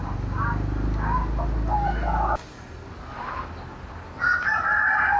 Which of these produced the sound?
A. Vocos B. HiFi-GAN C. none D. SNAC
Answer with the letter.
C